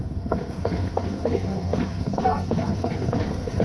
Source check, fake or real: fake